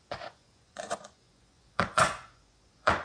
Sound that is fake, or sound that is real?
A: fake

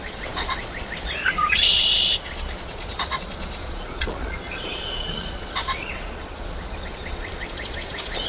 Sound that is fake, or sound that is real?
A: fake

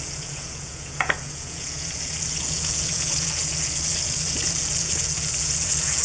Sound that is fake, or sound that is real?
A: fake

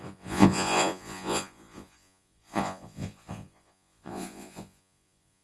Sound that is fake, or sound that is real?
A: fake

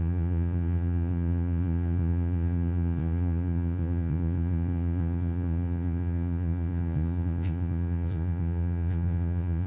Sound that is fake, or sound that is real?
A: fake